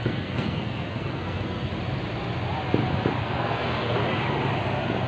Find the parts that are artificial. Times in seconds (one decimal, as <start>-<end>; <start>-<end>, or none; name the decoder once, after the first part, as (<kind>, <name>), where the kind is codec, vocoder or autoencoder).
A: 0.0-1.7 (codec, SNAC); 3.2-4.0